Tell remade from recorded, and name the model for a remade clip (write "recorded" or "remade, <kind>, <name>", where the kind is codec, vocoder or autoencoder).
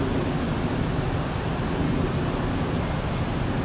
recorded